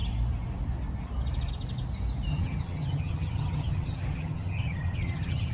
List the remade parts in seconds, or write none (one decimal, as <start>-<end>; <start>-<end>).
2.3-5.5